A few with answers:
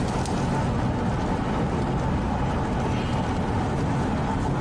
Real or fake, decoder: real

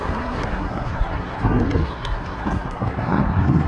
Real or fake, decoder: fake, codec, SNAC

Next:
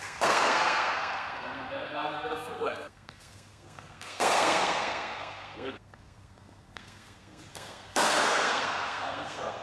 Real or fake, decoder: fake, codec, SNAC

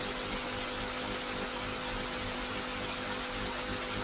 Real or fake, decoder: real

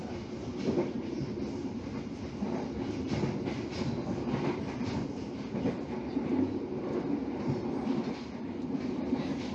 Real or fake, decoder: real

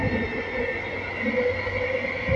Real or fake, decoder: real